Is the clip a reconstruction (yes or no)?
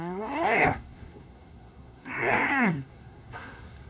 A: yes